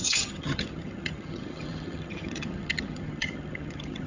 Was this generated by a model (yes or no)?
yes